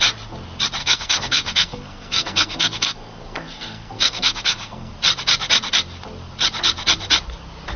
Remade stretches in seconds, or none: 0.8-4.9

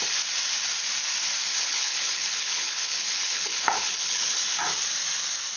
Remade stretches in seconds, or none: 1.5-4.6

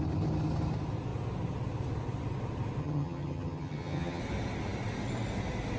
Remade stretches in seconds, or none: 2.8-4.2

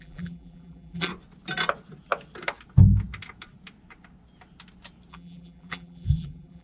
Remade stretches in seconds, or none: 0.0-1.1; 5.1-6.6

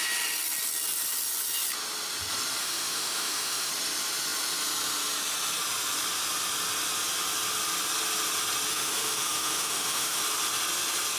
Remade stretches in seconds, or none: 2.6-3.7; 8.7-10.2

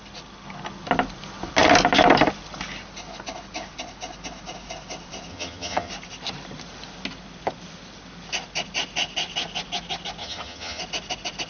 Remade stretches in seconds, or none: 5.3-5.9; 10.2-10.8

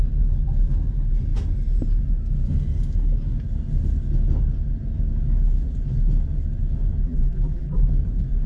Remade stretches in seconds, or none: 7.0-7.9

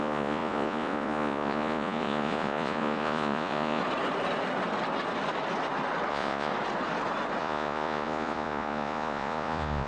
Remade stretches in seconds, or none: 0.0-3.8; 6.1-6.5; 7.4-9.9